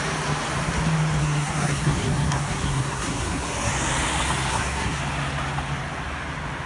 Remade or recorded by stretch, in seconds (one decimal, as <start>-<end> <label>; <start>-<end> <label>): 0.0-1.2 recorded; 1.2-3.7 remade; 3.7-4.5 recorded; 4.5-5.0 remade; 5.0-6.7 recorded